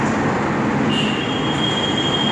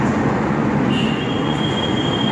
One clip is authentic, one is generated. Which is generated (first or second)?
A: second